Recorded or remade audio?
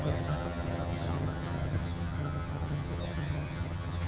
remade